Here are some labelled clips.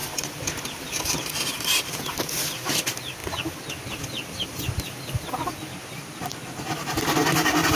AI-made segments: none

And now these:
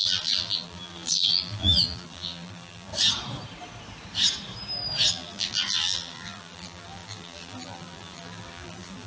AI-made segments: 0.0-2.9 (vocoder, BigVGAN v2); 5.1-9.1

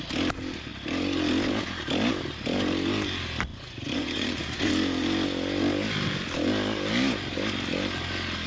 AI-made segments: 3.5-4.7 (vocoder, Vocos)

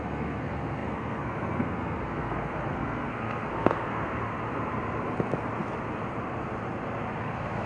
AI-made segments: 0.0-4.3 (codec, SNAC); 7.2-7.7

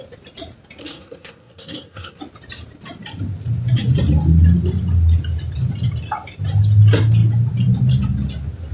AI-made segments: 0.8-2.2 (codec, SNAC)

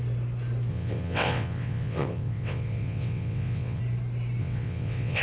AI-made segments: 0.7-3.8 (vocoder, WaveNeXt); 4.4-5.2